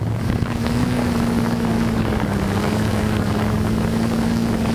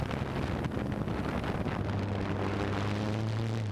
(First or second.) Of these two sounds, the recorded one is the second